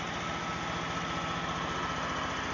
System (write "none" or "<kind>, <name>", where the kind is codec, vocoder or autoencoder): none